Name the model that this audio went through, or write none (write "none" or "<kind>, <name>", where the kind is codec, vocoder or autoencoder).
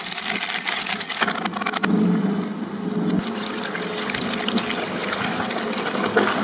none